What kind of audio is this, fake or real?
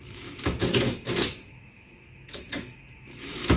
fake